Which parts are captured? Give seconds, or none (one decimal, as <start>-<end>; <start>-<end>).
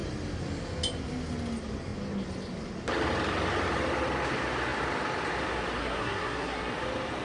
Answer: 0.0-5.8; 6.7-7.2